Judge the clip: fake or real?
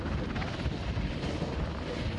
real